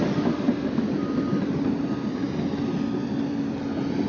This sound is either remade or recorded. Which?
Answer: recorded